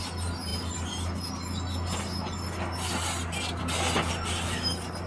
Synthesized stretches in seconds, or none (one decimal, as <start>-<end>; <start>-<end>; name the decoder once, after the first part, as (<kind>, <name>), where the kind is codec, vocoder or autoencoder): none